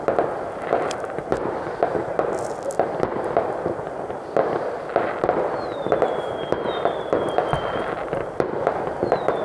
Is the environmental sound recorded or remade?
remade